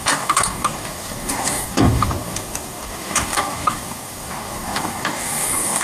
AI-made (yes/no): yes